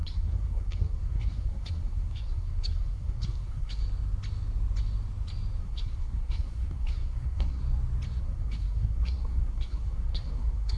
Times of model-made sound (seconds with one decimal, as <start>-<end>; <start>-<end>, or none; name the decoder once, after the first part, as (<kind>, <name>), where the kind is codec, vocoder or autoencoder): 0.0-3.8 (codec, SNAC); 5.6-7.6; 8.2-10.8

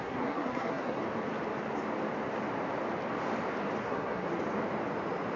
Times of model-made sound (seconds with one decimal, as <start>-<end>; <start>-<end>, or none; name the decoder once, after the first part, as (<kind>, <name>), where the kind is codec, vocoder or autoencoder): 0.0-1.0 (codec, SNAC); 3.8-4.3

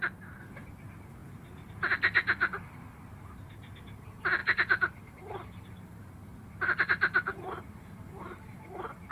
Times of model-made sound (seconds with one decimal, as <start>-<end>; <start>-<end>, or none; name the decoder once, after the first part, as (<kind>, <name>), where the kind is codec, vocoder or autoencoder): 4.4-9.1 (vocoder, BigVGAN v2)

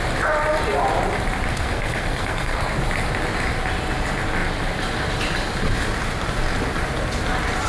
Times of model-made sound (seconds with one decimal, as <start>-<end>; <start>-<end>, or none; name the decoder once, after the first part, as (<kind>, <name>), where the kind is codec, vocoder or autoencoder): 1.5-2.8 (codec, SNAC)

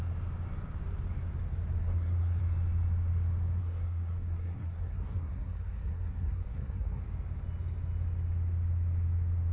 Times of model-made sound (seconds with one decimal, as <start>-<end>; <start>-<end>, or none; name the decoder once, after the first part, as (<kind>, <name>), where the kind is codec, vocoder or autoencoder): 1.8-2.4 (codec, SNAC); 3.6-7.0

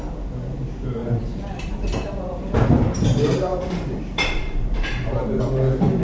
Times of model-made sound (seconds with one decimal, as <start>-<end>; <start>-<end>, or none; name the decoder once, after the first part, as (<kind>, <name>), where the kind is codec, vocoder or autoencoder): 1.0-2.9 (vocoder, BigVGAN v2); 3.5-5.4